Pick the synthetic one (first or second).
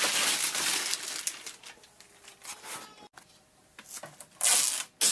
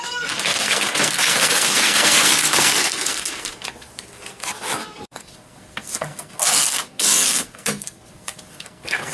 second